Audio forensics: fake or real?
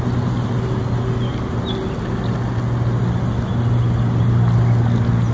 real